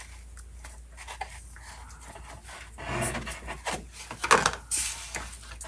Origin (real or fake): real